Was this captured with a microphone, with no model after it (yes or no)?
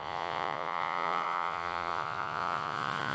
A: no